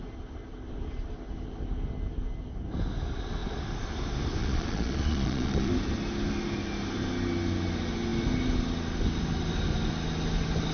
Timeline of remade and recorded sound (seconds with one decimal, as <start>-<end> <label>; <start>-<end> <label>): 0.0-4.4 recorded; 4.4-5.7 remade; 5.7-10.7 recorded